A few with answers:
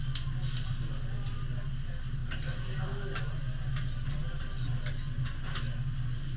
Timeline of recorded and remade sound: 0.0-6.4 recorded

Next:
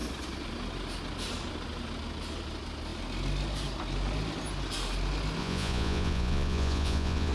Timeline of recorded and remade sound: 0.0-5.4 recorded; 5.4-7.3 remade

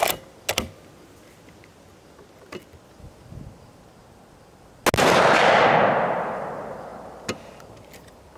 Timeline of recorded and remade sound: 0.0-8.4 recorded